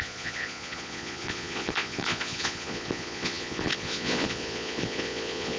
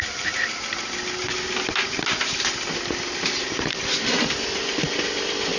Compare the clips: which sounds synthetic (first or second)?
first